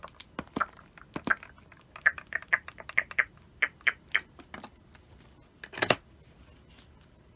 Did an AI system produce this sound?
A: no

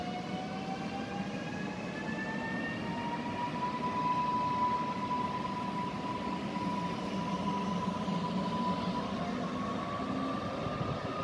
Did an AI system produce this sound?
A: no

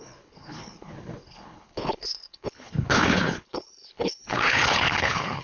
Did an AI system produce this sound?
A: yes